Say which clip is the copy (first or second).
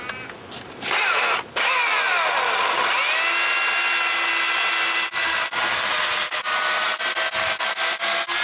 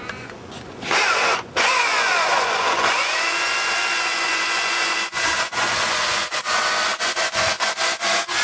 second